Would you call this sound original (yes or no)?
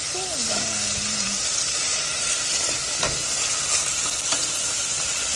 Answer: yes